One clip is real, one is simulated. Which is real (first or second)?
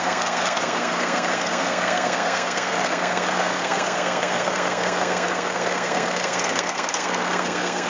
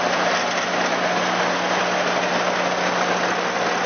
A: second